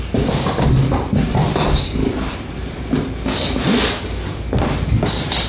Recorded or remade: recorded